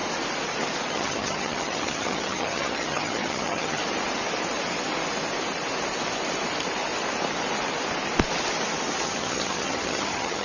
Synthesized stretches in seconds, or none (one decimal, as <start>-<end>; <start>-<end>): 0.9-3.8; 9.0-10.4

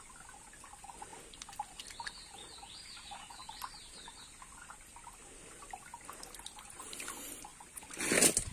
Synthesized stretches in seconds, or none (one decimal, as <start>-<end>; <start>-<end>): none

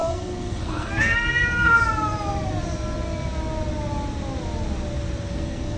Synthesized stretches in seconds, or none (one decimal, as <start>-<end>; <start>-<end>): 0.0-1.8; 5.3-5.8

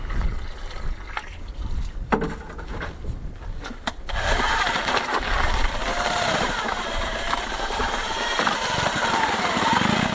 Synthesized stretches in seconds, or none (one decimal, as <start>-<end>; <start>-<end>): 5.9-9.5